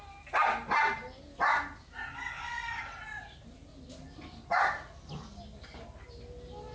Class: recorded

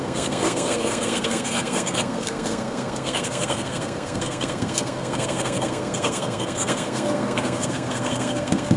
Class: remade